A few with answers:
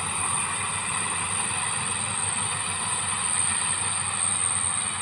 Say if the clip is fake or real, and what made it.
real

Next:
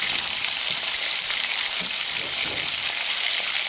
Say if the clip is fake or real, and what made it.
fake, vocoder, BigVGAN v2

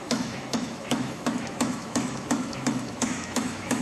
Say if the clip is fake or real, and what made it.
fake, autoencoder, DAC-VAE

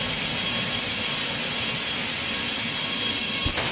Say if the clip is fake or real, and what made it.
real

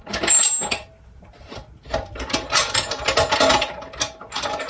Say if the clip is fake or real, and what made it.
real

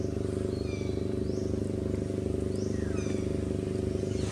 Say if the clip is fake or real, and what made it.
real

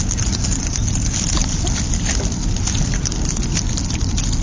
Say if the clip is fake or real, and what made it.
real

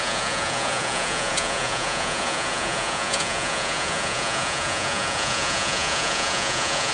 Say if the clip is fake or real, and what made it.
fake, vocoder, Vocos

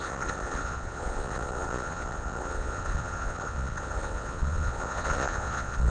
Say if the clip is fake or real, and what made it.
fake, vocoder, Vocos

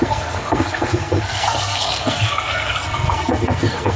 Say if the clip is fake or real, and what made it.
fake, codec, SNAC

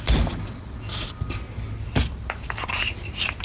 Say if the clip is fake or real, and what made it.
real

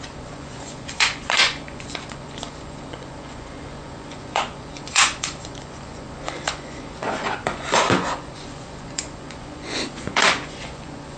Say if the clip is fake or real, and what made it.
fake, vocoder, Vocos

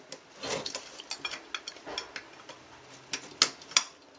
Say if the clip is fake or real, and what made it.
real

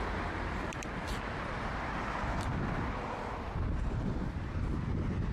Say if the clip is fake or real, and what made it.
fake, vocoder, BigVGAN v2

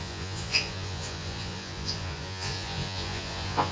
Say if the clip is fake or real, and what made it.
fake, vocoder, Vocos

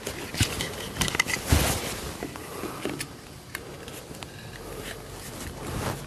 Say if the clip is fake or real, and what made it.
real